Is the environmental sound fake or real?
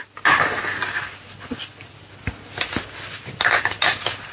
real